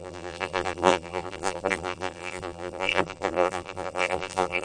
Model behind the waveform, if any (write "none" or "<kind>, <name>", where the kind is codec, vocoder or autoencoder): vocoder, BigVGAN v2